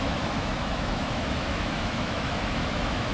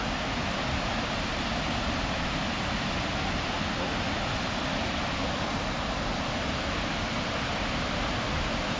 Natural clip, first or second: second